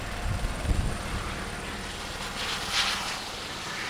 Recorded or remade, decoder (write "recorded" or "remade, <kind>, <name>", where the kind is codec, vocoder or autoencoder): recorded